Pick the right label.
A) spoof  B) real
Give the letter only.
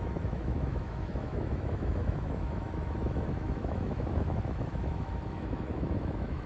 A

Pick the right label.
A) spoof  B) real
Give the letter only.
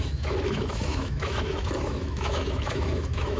A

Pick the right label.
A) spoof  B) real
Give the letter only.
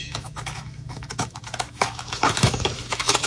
A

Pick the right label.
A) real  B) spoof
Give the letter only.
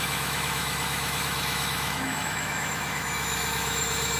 B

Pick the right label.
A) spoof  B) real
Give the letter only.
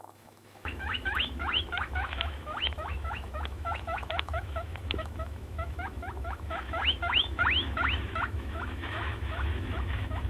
A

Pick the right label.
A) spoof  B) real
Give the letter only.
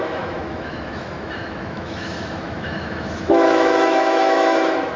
A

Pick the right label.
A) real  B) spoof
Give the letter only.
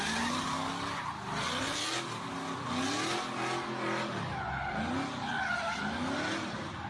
A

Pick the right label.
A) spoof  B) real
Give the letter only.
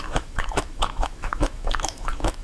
A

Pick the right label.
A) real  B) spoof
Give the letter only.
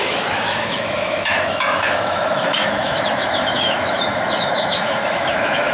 B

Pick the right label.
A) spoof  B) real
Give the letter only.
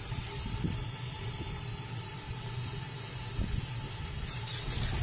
B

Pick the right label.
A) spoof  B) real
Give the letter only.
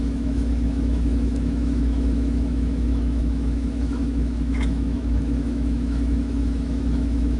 A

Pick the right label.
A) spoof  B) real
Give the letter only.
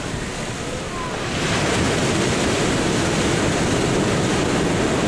B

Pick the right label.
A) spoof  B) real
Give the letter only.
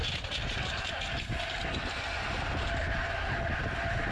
B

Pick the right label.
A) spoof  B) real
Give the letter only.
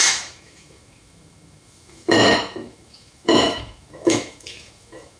A